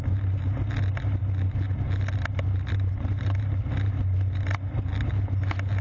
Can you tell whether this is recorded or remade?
recorded